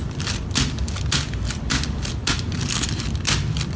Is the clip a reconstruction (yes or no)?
no